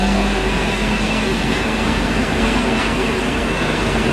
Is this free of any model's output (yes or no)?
no